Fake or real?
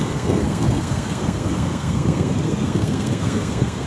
fake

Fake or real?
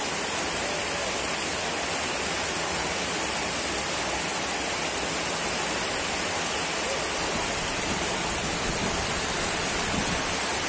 real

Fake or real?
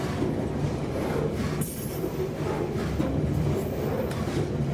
real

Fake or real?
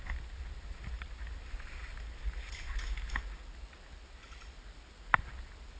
real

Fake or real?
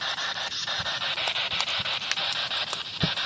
real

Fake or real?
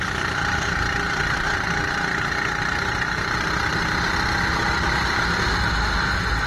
real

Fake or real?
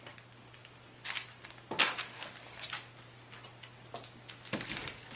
real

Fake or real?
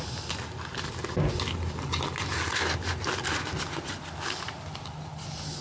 real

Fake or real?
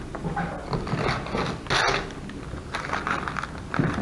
real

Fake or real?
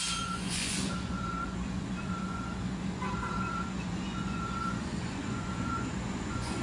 fake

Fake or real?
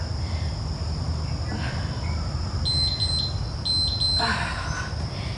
real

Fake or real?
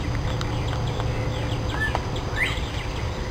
real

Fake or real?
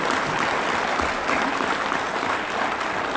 real